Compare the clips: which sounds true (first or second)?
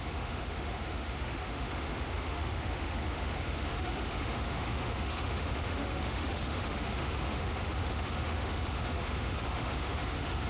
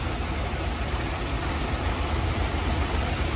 second